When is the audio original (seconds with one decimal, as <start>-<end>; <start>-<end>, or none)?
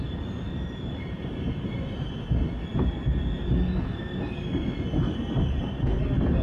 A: 0.0-0.5; 1.4-6.4